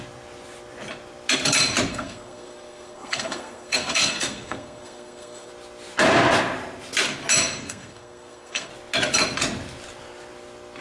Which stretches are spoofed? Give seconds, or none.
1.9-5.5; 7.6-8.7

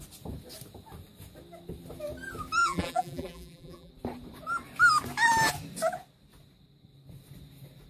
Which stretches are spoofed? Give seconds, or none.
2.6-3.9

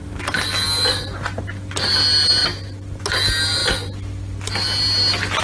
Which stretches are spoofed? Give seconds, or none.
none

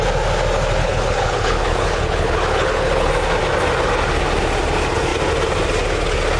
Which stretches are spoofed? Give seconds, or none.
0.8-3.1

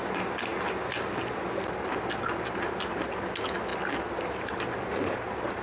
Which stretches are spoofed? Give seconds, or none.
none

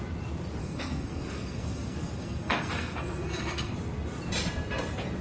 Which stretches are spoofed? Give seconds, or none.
0.6-3.7

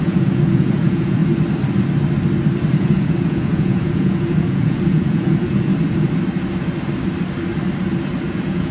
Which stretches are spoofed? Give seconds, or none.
0.0-1.2; 2.8-5.7; 8.2-8.7